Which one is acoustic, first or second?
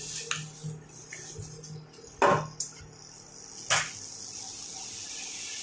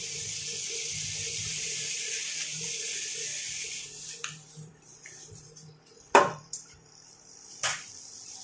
first